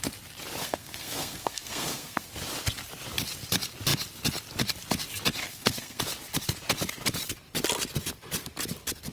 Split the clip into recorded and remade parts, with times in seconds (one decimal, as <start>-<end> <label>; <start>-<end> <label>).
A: 0.0-0.6 recorded; 0.6-2.3 remade; 2.3-5.4 recorded; 5.4-6.0 remade; 6.0-9.1 recorded